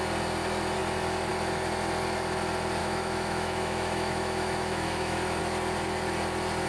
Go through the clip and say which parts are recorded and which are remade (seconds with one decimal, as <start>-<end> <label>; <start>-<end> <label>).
0.0-2.8 recorded; 2.8-5.4 remade; 5.4-6.7 recorded